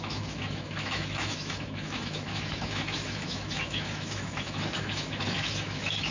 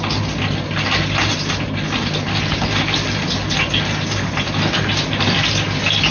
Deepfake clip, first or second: first